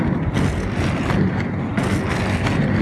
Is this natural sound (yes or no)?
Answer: yes